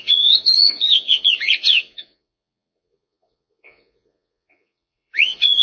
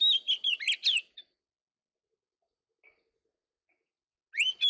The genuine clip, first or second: second